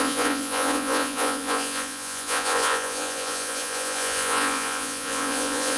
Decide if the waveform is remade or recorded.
remade